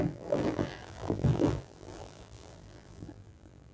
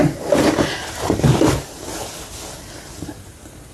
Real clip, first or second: second